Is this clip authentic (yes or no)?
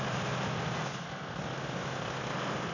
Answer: yes